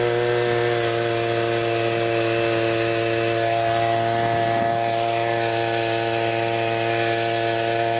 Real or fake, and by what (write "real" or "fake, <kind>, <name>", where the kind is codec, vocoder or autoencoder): real